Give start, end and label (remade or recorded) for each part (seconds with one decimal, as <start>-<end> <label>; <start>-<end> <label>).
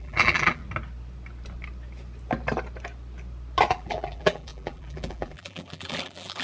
0.0-0.6 remade; 0.6-3.7 recorded; 3.7-6.4 remade